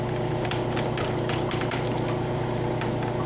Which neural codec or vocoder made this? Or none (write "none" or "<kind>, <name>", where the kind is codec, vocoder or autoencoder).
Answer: none